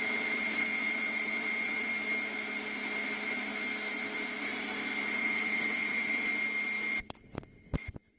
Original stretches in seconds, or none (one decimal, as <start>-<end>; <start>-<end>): 1.9-5.2; 6.3-7.0